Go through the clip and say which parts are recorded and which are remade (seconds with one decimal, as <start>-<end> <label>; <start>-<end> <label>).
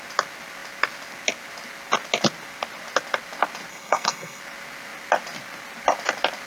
0.0-3.7 recorded; 3.7-4.4 remade; 4.4-6.5 recorded